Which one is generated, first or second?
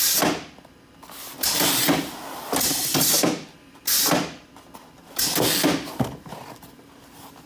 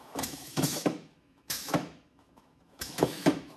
second